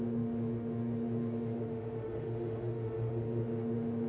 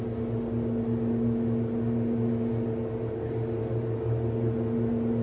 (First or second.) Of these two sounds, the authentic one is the second